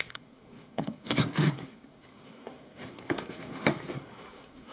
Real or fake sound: fake